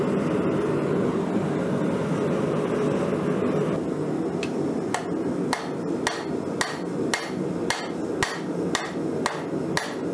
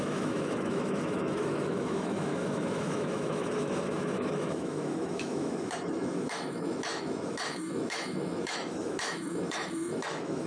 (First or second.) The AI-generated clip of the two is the second